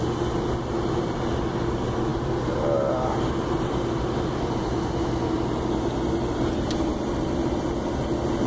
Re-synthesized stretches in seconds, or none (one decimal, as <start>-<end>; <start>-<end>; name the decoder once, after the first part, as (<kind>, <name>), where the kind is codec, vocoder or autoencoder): none